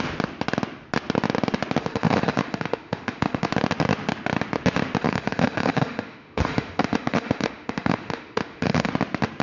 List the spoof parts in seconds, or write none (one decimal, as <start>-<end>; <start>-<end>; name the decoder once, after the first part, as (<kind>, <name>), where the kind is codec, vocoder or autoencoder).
1.8-3.5 (autoencoder, DAC-VAE); 5.0-8.9

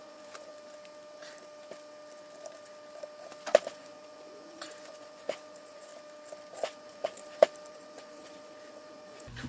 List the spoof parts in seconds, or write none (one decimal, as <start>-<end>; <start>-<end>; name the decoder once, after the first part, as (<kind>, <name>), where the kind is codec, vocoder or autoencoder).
0.0-0.5 (vocoder, Vocos); 3.7-5.9; 6.5-7.2; 7.7-9.5

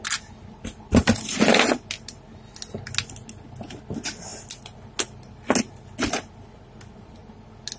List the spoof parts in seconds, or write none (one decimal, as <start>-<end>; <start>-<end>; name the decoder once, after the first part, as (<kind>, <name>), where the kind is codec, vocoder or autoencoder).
none

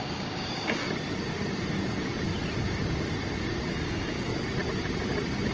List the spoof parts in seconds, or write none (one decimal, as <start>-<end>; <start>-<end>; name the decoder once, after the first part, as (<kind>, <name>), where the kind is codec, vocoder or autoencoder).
0.0-0.8 (codec, DAC); 3.7-4.3